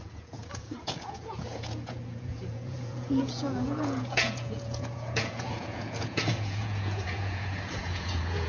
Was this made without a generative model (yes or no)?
no